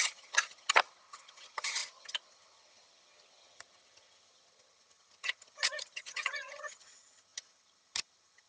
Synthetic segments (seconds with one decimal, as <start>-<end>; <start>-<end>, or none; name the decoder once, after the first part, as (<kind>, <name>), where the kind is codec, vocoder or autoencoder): 0.0-8.5 (vocoder, HiFi-GAN)